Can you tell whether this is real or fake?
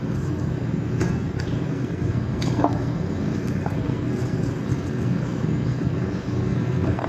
fake